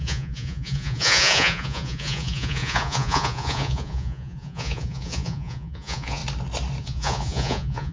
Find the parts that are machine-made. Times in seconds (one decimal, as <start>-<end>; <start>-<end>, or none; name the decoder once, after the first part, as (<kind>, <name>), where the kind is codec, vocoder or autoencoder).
0.0-6.2 (vocoder, Vocos); 6.8-7.9